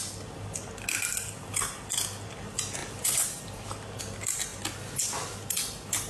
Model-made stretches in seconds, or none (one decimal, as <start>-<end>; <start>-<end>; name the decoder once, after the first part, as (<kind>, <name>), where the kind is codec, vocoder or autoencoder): 2.8-4.0 (vocoder, BigVGAN v2)